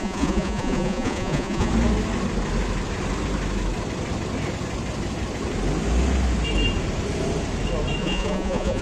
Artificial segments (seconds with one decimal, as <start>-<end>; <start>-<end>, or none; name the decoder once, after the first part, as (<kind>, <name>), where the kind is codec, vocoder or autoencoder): 0.0-1.7 (vocoder, Vocos); 8.0-8.8